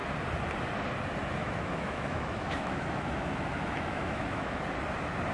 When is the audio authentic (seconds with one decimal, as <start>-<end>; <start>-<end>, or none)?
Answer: 0.0-1.4; 4.6-5.3